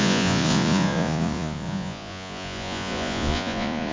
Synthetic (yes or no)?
yes